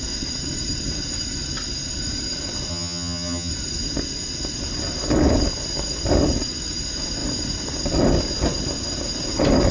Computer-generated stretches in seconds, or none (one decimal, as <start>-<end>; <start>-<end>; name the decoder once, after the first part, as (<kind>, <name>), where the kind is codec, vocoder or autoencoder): 2.7-3.5 (vocoder, HiFi-GAN)